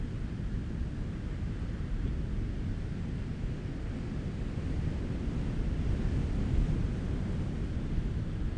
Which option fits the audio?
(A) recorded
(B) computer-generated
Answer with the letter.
A